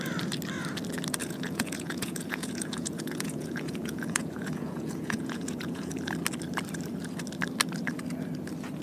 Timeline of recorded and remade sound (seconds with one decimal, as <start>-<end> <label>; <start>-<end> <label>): 0.0-1.2 recorded; 1.2-5.9 remade; 5.9-8.8 recorded